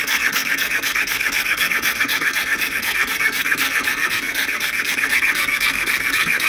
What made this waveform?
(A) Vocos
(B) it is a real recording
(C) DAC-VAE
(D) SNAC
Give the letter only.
D